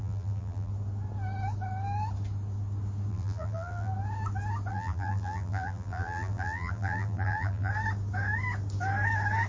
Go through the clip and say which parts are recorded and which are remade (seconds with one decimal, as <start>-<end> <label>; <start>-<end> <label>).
0.0-0.7 remade; 0.7-3.1 recorded; 3.1-3.9 remade; 3.9-4.7 recorded; 4.7-7.7 remade; 7.7-9.5 recorded